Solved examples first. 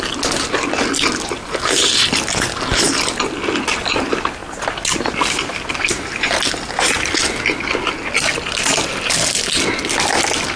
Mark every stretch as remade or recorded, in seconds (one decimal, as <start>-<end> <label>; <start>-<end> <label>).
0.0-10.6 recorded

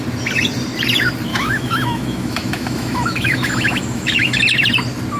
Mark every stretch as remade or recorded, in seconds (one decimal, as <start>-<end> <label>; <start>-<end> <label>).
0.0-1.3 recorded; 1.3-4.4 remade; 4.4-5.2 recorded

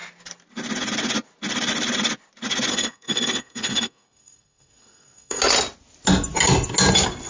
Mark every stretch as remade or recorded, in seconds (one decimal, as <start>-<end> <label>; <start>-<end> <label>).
0.0-2.7 recorded; 2.7-5.4 remade; 5.4-7.3 recorded